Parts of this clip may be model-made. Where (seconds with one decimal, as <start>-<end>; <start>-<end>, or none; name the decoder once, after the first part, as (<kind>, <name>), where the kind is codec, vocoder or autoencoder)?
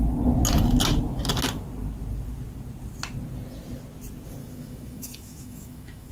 4.4-6.1 (autoencoder, DAC-VAE)